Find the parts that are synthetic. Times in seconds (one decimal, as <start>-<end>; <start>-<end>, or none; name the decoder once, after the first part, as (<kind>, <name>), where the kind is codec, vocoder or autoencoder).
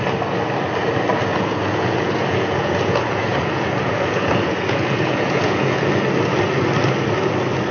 1.3-5.9 (vocoder, Vocos)